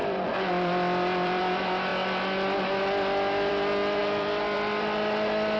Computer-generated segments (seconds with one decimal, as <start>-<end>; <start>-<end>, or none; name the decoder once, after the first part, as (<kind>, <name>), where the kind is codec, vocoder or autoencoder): 0.0-1.4 (vocoder, BigVGAN v2); 4.0-5.6